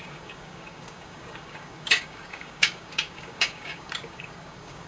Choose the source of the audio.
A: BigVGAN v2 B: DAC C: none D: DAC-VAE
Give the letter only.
B